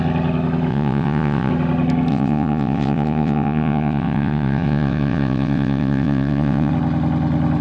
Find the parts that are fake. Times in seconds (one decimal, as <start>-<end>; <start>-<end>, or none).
0.7-1.5; 2.1-6.7

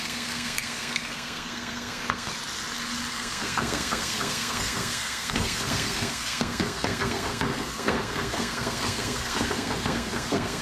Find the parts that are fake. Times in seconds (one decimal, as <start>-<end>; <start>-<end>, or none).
0.0-2.3; 3.1-10.6

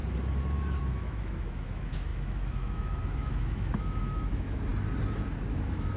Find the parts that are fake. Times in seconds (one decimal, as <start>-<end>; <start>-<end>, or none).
0.8-4.7; 5.5-6.0

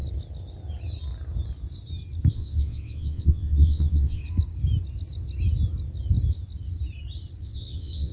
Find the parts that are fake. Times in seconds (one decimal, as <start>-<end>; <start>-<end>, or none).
2.3-4.2; 7.4-8.1

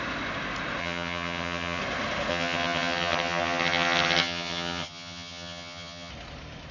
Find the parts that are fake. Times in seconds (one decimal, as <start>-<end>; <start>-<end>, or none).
0.8-1.8; 2.3-6.1

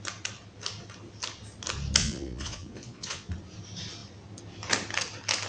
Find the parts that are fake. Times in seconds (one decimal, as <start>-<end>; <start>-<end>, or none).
2.0-3.3

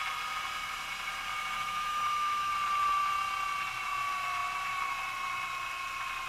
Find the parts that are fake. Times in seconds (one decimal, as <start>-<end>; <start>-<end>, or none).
1.3-2.5